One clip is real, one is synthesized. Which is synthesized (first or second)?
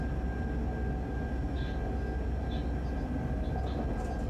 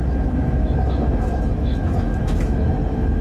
second